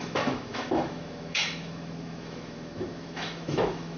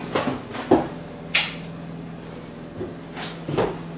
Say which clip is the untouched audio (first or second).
second